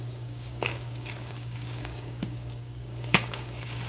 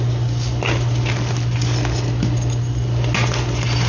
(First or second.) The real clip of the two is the second